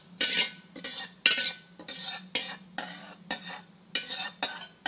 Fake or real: real